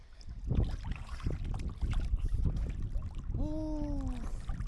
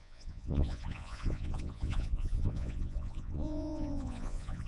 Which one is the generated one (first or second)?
second